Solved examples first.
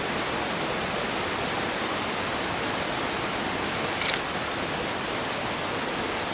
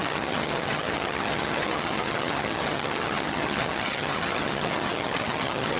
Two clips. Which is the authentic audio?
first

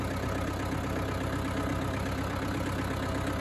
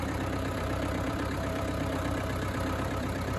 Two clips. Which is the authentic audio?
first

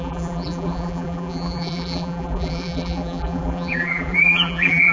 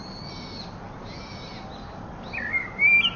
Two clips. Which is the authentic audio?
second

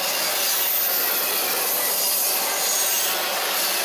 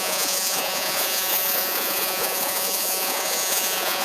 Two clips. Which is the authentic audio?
first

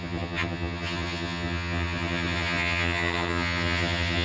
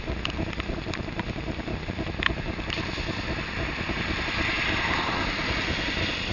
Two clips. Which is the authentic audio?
second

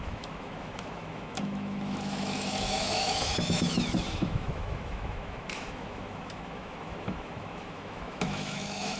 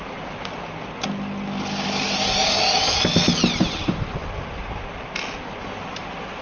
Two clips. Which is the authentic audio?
second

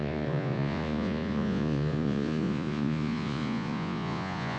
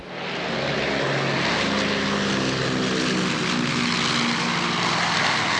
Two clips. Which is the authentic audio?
second